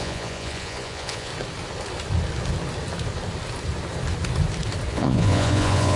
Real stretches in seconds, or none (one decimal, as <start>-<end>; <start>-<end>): 1.3-4.9